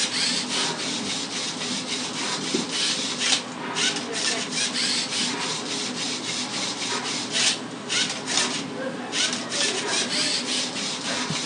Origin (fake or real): real